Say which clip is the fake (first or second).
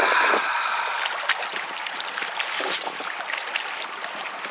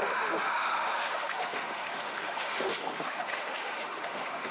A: second